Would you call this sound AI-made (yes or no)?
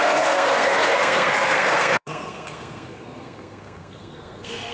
yes